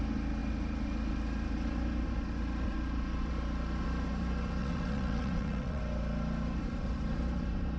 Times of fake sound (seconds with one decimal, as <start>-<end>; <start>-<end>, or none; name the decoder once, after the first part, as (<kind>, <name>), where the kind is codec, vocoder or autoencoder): 4.6-5.8 (vocoder, WaveNeXt)